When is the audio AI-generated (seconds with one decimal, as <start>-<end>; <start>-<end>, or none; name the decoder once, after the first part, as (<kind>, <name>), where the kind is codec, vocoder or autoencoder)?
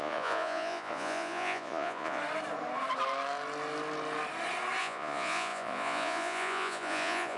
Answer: 0.0-2.2 (vocoder, Vocos); 4.8-7.4